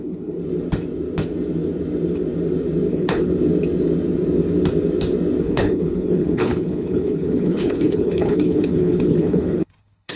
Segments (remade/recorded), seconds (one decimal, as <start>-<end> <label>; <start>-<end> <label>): 0.0-0.4 remade; 0.4-2.9 recorded; 2.9-3.3 remade; 3.3-5.4 recorded; 5.4-10.2 remade